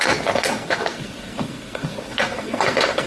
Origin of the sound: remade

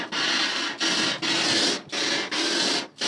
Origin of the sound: recorded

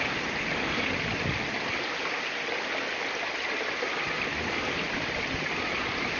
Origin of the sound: recorded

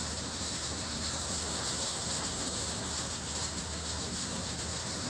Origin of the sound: remade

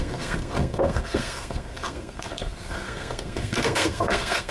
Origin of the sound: remade